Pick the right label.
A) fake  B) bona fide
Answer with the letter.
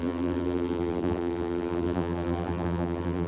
A